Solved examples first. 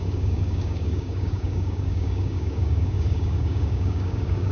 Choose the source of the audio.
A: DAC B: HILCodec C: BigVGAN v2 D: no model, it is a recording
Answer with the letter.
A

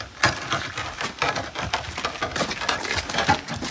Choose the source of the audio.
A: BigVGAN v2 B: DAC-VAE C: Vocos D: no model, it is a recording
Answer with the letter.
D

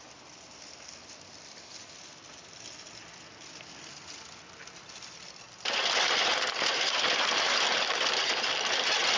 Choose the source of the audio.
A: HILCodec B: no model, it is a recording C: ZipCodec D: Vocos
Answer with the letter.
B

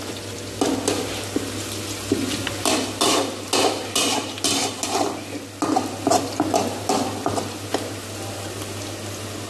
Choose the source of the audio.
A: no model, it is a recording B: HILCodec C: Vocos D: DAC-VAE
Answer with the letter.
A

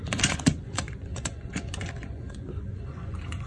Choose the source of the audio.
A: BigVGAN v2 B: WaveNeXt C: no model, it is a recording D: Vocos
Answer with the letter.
D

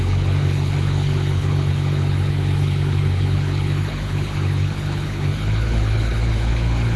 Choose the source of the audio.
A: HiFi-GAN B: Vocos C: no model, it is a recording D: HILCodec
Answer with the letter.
D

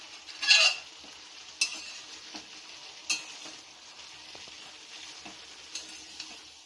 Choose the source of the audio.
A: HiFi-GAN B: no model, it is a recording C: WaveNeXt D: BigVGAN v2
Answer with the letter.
B